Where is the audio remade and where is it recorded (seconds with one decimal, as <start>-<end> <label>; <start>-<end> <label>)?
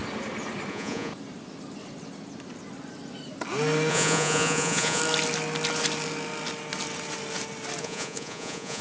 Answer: 0.0-0.7 recorded; 0.7-1.1 remade; 1.1-3.9 recorded; 3.9-5.0 remade; 5.0-7.8 recorded; 7.8-8.8 remade